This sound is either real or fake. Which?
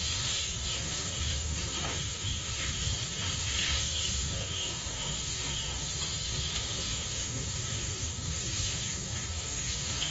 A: fake